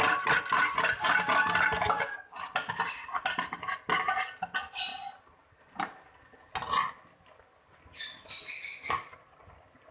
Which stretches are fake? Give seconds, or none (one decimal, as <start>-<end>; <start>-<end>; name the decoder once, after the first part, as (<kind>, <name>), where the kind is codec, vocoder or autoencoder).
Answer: none